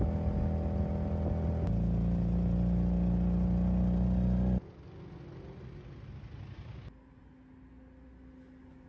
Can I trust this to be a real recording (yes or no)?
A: yes